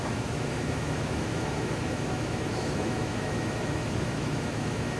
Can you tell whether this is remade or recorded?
remade